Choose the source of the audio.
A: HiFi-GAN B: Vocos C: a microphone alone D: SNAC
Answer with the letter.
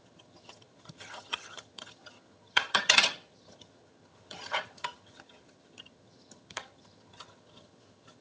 A